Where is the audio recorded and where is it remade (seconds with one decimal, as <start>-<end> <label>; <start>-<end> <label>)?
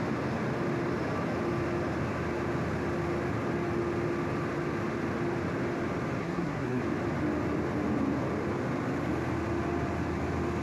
0.0-6.2 recorded; 6.2-6.8 remade; 6.8-10.6 recorded